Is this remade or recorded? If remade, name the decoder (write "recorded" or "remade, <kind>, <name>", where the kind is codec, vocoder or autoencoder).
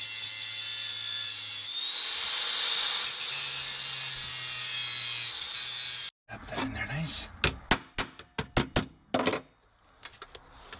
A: recorded